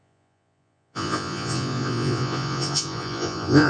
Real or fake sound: fake